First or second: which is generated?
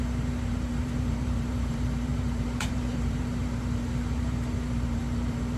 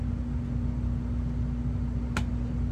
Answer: first